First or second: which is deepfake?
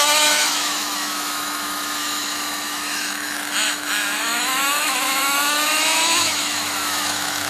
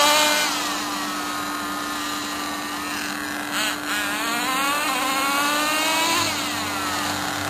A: first